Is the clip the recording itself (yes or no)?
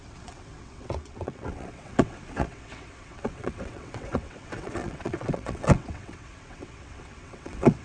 no